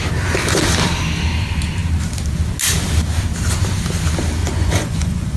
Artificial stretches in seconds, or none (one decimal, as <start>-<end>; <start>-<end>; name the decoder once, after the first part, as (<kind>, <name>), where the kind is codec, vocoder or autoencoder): 4.4-5.4 (vocoder, Vocos)